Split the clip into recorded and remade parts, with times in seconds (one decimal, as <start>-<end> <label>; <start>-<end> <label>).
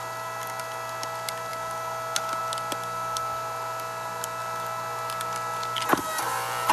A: 0.0-6.7 recorded